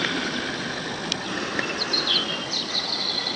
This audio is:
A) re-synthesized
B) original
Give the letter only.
B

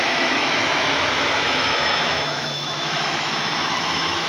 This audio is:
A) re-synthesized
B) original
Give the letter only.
A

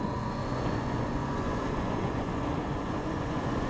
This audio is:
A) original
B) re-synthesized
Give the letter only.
B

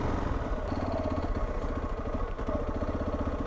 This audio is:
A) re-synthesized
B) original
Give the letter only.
B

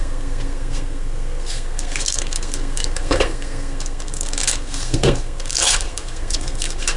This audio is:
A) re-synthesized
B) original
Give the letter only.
A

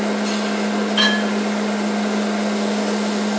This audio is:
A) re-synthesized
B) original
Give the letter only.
B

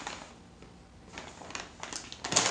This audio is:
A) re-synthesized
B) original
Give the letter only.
B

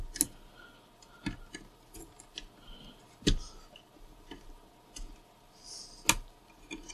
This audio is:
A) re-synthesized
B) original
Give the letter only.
B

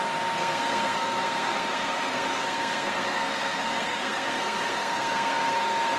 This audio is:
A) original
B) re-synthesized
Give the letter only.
B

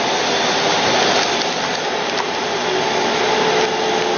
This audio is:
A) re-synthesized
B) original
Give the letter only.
B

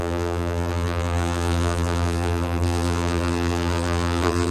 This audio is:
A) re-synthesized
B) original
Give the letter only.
A